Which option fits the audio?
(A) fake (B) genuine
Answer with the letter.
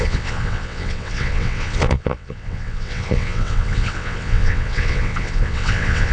A